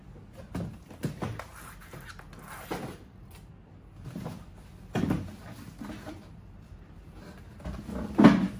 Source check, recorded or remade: recorded